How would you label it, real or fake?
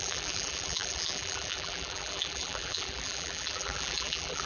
fake